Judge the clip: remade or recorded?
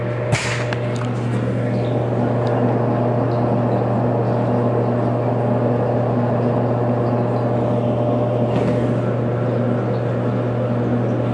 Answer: recorded